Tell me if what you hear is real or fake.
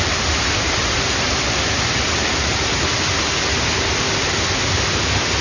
real